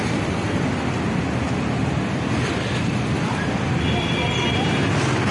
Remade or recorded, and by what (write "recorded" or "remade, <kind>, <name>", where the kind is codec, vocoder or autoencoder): recorded